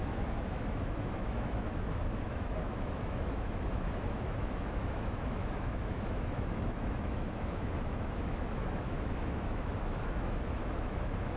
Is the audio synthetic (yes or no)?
yes